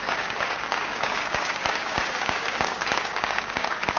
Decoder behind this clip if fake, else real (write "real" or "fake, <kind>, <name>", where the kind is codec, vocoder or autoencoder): fake, codec, DAC